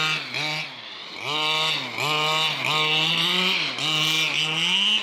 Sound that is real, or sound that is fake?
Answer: real